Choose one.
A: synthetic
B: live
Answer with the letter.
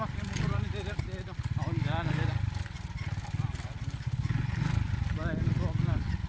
B